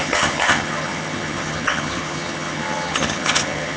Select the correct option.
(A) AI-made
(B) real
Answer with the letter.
A